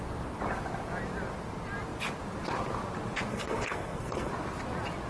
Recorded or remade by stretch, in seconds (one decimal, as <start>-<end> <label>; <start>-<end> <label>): 0.0-3.3 recorded; 3.3-4.3 remade; 4.3-5.1 recorded